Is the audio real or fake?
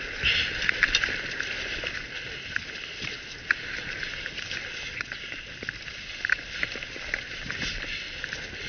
real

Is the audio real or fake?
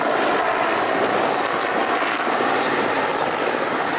real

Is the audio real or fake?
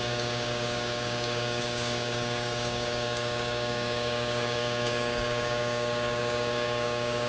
fake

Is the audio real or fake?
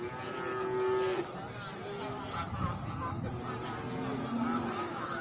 real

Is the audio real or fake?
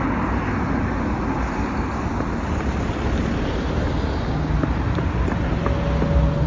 real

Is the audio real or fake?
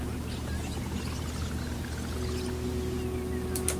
real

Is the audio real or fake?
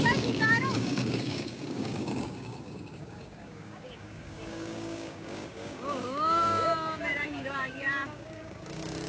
fake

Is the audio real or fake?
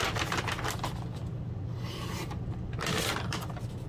real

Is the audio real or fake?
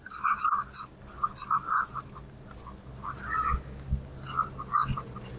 real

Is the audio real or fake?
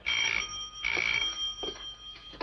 fake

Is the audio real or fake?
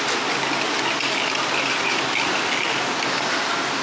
real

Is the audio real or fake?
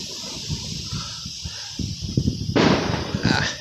real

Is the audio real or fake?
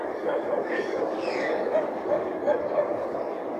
fake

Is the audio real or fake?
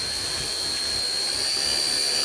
real